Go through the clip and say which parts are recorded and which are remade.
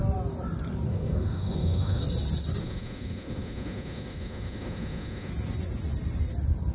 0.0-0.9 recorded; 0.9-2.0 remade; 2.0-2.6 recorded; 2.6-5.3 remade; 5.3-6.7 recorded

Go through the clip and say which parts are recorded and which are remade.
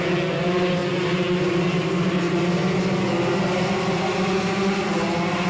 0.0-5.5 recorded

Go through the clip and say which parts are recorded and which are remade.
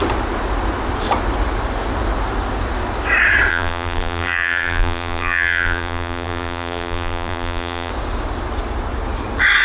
0.0-3.5 recorded; 3.5-7.9 remade; 7.9-9.6 recorded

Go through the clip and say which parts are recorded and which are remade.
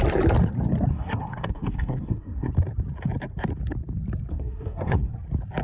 0.0-0.9 recorded; 0.9-2.5 remade; 2.5-4.3 recorded; 4.3-5.1 remade; 5.1-5.6 recorded